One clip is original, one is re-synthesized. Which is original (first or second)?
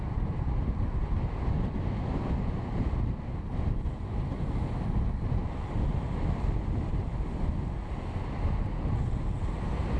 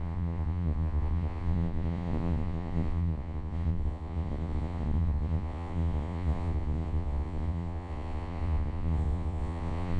first